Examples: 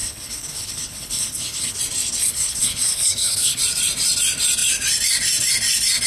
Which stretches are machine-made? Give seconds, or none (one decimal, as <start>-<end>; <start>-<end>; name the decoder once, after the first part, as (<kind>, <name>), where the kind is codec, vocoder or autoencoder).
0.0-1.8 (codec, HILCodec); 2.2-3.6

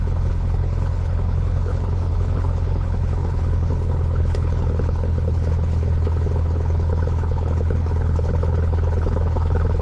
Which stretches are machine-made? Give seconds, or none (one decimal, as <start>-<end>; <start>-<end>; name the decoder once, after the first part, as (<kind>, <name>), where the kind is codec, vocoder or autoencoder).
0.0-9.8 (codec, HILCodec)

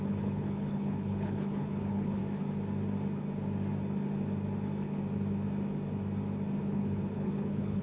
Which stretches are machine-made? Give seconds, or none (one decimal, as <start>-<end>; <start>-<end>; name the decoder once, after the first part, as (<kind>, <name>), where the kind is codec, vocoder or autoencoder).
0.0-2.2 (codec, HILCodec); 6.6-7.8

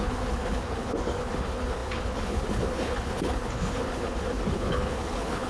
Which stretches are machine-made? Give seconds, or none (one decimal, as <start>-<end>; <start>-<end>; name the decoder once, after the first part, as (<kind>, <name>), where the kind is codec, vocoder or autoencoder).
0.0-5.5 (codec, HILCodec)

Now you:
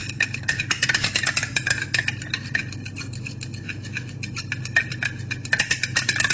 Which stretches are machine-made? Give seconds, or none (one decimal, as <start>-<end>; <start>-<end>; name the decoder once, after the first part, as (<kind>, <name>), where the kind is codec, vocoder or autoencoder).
0.0-0.6 (codec, HILCodec)

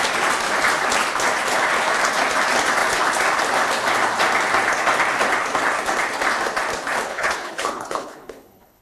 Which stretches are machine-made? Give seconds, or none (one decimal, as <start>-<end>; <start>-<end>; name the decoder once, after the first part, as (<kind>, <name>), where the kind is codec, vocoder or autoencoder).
7.1-8.8 (codec, HILCodec)

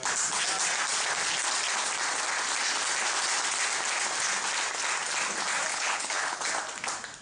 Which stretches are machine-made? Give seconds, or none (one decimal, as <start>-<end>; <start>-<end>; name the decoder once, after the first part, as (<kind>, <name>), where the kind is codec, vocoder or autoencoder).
5.7-6.4 (codec, HILCodec)

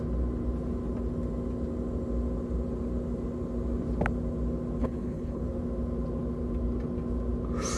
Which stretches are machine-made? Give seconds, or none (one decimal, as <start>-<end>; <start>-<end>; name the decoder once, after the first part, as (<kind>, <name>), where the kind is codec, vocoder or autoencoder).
4.8-5.4 (codec, HILCodec)